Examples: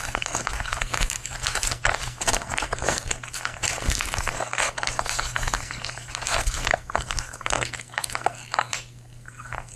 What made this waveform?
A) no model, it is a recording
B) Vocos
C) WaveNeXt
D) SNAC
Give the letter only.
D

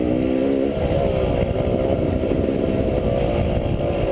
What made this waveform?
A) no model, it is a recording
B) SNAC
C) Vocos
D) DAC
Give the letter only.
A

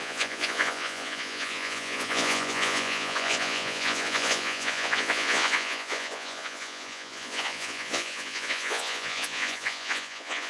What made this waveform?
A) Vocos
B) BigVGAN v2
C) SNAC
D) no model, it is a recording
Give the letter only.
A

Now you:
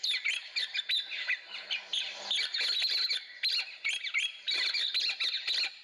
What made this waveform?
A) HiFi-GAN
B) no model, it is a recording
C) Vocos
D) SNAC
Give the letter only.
B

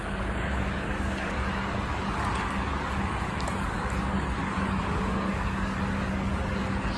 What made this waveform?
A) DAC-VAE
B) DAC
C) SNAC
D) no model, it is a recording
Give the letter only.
B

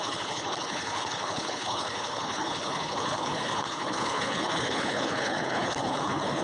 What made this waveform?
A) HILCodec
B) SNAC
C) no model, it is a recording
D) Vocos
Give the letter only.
A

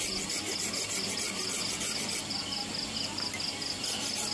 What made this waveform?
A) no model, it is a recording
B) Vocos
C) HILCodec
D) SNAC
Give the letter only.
A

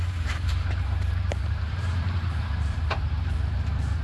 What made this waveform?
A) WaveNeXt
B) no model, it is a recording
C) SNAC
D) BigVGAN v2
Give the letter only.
D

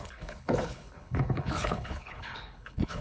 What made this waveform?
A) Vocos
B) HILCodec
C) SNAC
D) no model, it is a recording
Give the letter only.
B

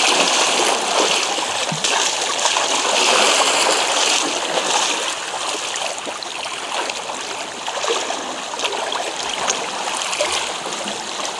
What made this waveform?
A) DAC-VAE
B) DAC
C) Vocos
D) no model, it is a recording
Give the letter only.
D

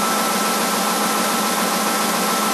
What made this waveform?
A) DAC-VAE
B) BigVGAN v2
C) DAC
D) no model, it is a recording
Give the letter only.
D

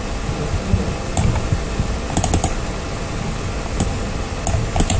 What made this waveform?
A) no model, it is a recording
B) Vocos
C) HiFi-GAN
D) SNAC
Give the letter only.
A